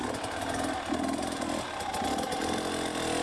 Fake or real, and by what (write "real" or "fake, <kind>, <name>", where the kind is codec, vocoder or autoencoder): real